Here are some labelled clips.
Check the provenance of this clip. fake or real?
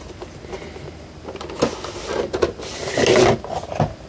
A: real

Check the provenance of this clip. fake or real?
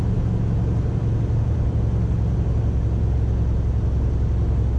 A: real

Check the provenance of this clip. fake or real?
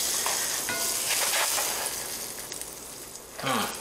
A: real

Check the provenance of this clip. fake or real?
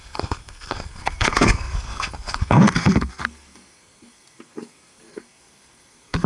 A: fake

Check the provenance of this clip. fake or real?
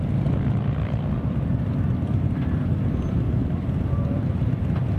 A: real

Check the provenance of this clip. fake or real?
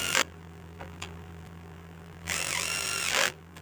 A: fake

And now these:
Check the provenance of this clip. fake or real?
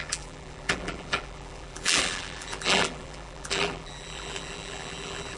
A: fake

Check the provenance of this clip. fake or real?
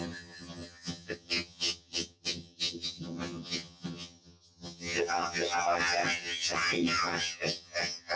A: fake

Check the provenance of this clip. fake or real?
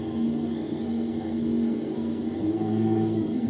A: fake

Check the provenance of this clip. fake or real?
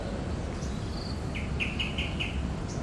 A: real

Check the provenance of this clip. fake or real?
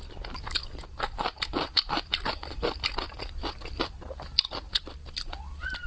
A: real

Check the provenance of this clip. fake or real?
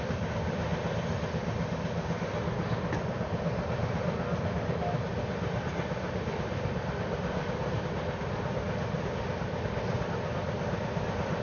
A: real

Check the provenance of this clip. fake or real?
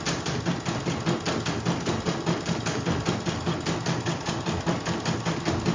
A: real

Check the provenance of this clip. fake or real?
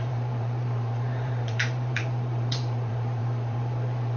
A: fake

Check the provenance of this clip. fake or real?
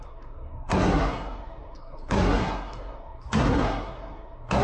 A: fake